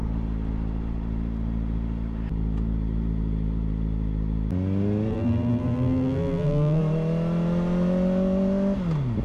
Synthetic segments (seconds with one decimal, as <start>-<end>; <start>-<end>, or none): 5.1-6.8